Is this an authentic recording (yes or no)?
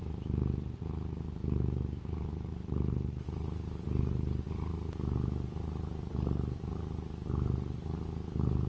yes